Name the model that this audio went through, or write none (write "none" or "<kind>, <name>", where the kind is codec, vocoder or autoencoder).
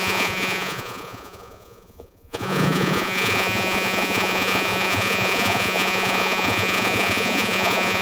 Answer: vocoder, Vocos